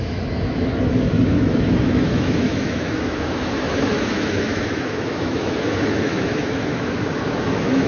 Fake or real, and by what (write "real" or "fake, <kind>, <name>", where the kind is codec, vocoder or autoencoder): fake, autoencoder, DAC-VAE